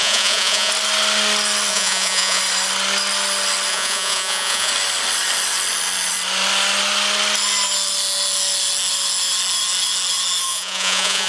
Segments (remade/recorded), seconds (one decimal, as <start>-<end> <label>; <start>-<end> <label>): 0.0-0.7 remade; 0.7-1.7 recorded; 1.7-2.4 remade; 2.4-3.7 recorded; 3.7-4.7 remade; 4.7-10.5 recorded; 10.5-11.3 remade

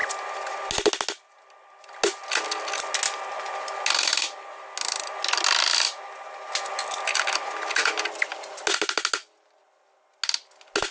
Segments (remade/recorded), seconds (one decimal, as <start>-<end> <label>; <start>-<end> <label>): 0.0-10.9 recorded